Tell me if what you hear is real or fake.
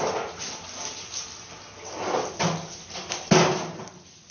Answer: real